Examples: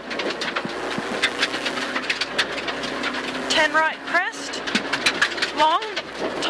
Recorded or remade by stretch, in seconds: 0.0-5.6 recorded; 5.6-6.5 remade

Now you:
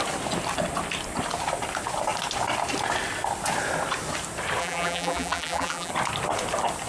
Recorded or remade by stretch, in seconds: 0.0-4.6 recorded; 4.6-5.9 remade; 5.9-6.9 recorded

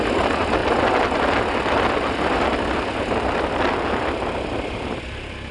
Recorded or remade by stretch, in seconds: 0.0-0.6 remade; 0.6-3.9 recorded; 3.9-5.5 remade

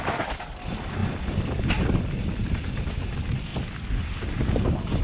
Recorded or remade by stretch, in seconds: 0.0-5.0 recorded